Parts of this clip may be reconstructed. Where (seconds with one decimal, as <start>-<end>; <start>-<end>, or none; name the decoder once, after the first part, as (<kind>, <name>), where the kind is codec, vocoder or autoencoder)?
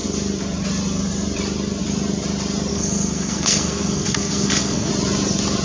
2.7-4.9 (codec, SNAC)